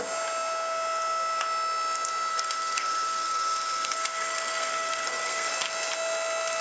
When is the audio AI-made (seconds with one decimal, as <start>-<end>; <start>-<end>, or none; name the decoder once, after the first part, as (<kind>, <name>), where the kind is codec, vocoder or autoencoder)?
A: 2.3-5.5 (codec, SNAC)